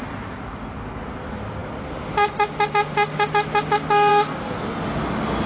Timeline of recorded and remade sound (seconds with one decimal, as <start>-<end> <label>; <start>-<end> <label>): 0.0-5.5 recorded